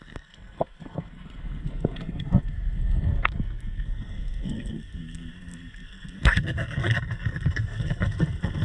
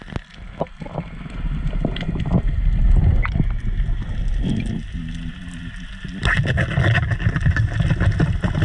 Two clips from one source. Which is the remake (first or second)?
first